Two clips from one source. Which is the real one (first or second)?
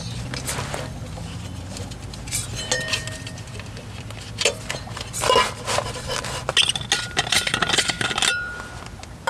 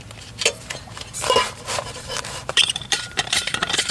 first